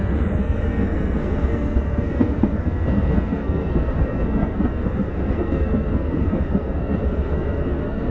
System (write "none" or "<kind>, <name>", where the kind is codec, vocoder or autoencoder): codec, SNAC